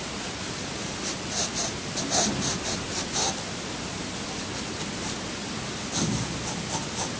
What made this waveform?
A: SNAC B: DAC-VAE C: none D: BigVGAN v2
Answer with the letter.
C